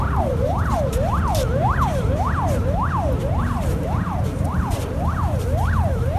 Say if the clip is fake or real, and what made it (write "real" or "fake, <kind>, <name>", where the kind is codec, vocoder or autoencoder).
fake, vocoder, BigVGAN v2